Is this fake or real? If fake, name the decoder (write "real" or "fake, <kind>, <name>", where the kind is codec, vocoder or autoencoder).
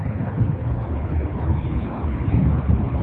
fake, codec, HILCodec